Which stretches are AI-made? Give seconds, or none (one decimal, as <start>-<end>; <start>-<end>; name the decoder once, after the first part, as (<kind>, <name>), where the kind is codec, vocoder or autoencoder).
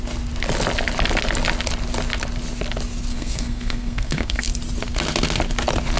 3.1-4.4 (codec, SNAC)